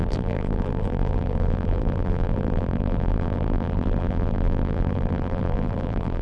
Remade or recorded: remade